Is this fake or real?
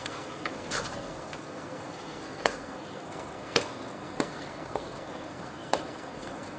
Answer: fake